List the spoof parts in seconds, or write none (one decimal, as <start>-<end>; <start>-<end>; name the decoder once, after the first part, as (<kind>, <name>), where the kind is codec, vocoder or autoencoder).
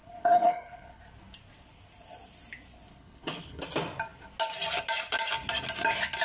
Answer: 0.0-1.0 (codec, HILCodec); 2.9-3.6